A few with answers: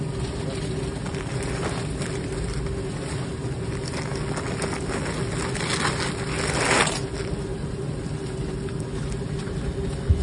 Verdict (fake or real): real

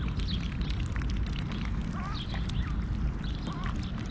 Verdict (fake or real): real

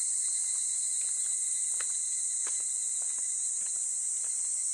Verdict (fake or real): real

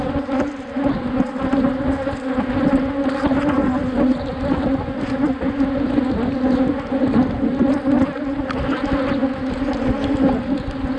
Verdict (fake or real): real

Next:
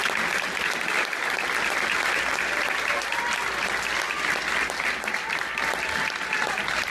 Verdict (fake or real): real